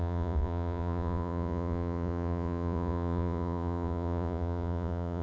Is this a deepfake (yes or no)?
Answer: yes